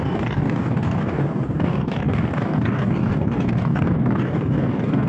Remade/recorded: remade